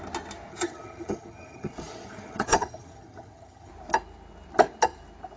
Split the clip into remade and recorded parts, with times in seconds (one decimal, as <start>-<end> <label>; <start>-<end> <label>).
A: 0.0-0.5 recorded; 0.5-3.7 remade; 3.7-5.4 recorded